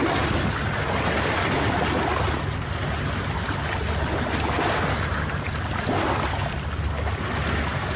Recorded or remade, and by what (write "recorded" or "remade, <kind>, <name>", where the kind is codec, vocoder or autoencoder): recorded